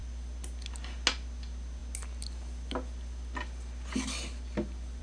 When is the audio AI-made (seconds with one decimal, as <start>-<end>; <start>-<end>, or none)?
none